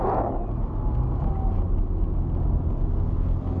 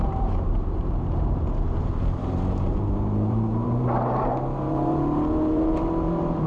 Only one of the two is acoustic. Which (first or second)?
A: first